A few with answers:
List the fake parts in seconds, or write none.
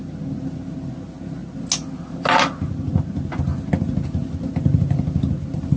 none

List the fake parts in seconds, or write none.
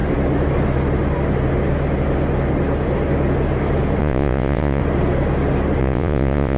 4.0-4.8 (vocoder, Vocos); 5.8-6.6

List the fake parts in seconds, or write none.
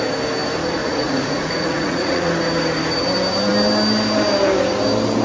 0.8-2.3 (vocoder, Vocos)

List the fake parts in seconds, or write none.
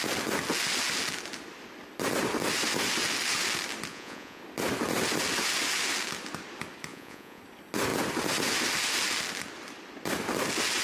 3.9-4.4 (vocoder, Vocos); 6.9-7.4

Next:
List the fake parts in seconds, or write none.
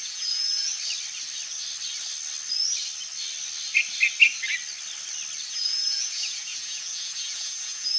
0.0-0.7 (vocoder, Vocos); 5.5-8.0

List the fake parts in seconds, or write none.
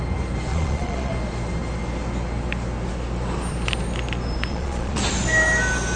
0.5-1.1 (vocoder, Vocos); 4.5-5.0